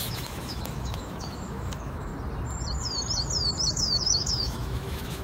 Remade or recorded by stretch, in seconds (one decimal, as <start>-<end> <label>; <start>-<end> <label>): 0.0-2.1 remade; 2.1-3.7 recorded; 3.7-5.2 remade